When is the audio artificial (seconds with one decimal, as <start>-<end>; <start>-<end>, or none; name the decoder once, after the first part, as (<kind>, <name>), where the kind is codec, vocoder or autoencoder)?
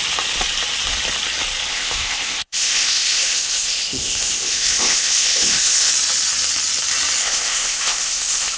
1.7-5.9 (codec, ZipCodec); 7.2-8.6